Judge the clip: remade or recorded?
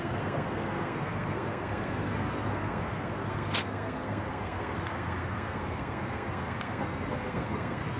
remade